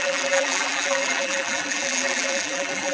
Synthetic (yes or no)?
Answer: yes